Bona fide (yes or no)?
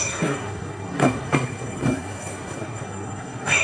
no